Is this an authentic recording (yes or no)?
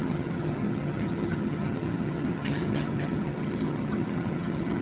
no